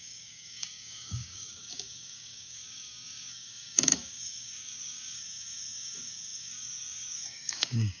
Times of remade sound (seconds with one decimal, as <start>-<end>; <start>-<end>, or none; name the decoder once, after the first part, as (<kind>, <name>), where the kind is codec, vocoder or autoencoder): 0.0-8.0 (codec, DAC)